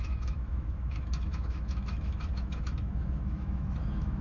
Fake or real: fake